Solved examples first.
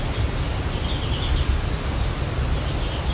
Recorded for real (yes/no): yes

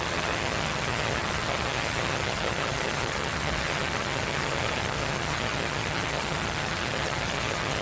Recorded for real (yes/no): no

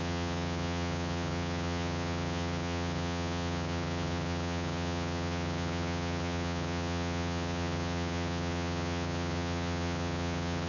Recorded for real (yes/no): no